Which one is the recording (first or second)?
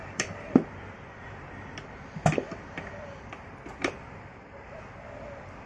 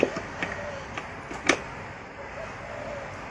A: second